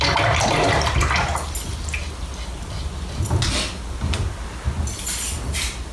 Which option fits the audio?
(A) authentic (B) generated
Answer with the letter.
A